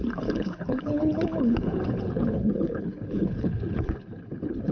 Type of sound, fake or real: fake